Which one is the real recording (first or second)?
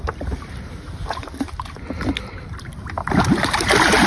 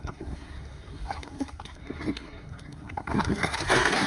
first